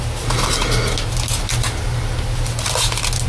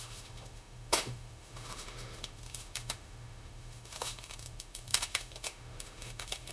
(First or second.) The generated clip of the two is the second